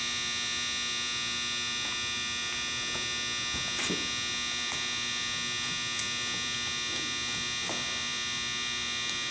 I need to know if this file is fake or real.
real